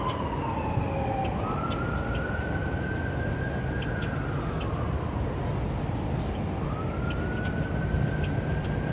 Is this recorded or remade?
recorded